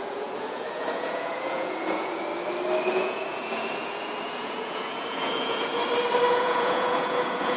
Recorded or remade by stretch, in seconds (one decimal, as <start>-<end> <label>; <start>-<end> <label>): 0.0-2.3 remade; 2.3-2.9 recorded; 2.9-5.8 remade; 5.8-6.3 recorded; 6.3-7.6 remade